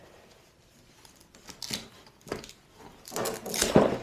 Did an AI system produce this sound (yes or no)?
no